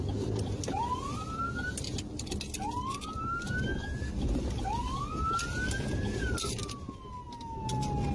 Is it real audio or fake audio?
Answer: real